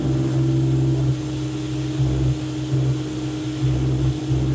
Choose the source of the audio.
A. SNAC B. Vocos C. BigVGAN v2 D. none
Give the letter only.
D